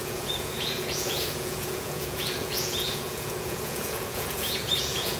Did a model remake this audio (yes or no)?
yes